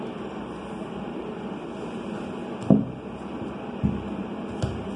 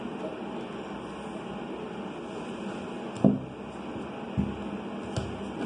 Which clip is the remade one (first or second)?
first